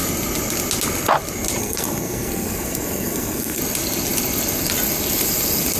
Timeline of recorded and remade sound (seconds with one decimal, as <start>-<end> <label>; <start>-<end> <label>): 0.0-1.6 recorded; 1.6-3.6 remade; 3.6-5.8 recorded